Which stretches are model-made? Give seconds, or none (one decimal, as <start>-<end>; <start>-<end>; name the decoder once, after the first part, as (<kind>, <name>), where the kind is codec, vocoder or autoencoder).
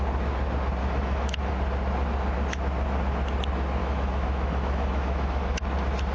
0.8-1.5 (autoencoder, DAC-VAE); 3.8-5.6